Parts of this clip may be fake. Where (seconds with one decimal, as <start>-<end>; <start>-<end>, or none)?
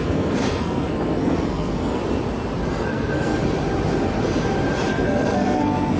0.0-2.0; 2.7-3.3; 4.9-6.0